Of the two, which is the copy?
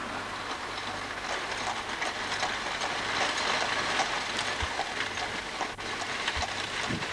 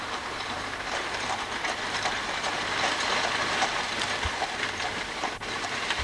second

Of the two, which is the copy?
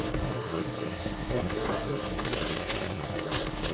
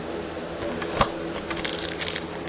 first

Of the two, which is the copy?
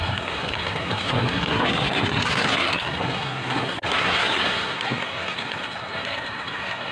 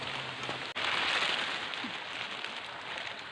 first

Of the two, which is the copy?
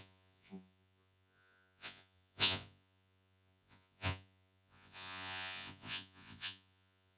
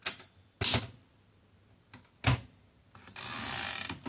first